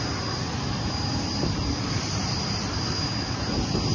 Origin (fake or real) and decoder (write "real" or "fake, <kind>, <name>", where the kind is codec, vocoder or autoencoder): real